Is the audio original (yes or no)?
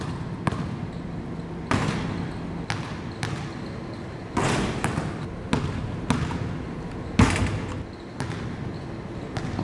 yes